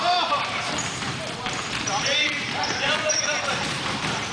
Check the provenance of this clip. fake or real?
fake